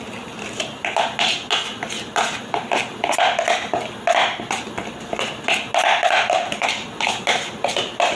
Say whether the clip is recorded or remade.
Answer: recorded